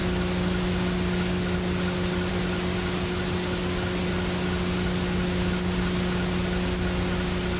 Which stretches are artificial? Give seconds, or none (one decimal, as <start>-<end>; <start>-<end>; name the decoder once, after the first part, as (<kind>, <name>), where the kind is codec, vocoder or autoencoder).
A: none